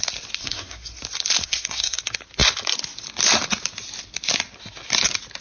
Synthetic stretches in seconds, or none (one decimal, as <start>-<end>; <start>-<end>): 0.4-1.0; 1.4-2.0